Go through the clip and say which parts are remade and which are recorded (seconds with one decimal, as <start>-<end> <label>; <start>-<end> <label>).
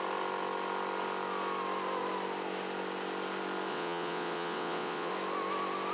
0.0-3.7 recorded; 3.7-5.1 remade; 5.1-5.9 recorded